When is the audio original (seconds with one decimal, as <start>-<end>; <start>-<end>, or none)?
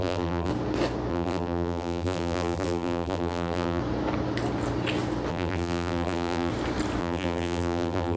0.5-1.1; 3.8-5.3; 6.5-7.0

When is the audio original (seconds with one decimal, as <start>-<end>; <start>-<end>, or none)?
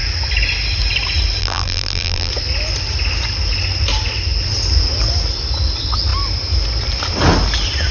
0.0-1.4; 2.3-7.9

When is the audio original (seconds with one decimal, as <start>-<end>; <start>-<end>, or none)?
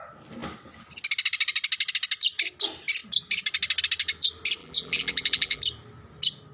0.0-4.6; 5.6-6.5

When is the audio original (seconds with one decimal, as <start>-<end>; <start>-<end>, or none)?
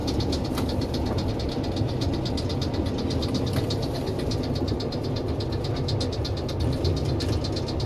0.0-7.9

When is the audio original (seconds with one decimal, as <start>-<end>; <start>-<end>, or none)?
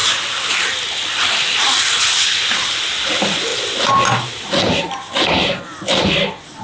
0.0-6.6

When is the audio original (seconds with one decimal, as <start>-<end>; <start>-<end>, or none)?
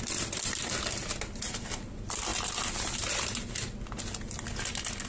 0.0-5.1